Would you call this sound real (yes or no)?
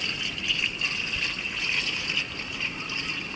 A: yes